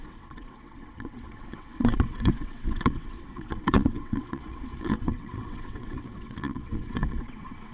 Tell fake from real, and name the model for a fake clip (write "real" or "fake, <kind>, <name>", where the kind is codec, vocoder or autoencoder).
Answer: fake, vocoder, WaveNeXt